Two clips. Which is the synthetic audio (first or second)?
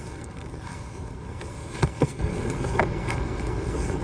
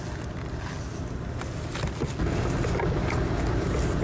first